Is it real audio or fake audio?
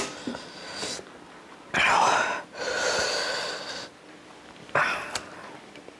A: real